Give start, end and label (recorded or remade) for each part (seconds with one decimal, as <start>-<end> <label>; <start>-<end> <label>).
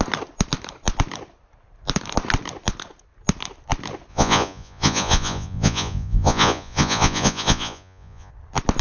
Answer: 0.0-4.1 recorded; 4.1-8.3 remade; 8.3-8.8 recorded